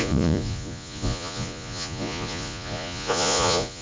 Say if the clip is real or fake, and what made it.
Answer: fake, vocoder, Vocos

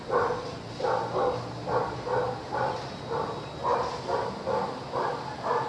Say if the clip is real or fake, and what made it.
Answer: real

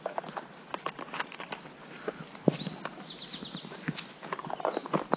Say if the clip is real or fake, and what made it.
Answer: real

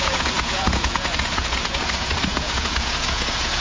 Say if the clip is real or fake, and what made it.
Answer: fake, vocoder, Vocos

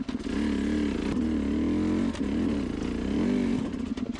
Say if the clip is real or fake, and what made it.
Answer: real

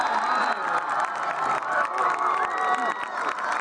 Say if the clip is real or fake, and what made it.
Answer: real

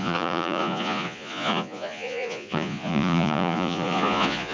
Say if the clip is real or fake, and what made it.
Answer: fake, vocoder, Vocos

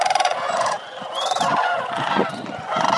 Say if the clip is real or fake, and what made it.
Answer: fake, vocoder, Vocos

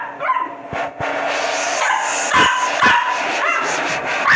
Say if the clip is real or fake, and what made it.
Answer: real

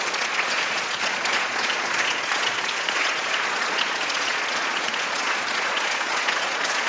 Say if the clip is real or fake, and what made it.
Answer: fake, vocoder, Vocos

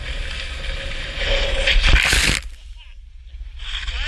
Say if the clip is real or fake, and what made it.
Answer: real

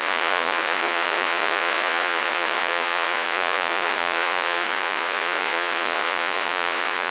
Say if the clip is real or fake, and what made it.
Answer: fake, vocoder, Vocos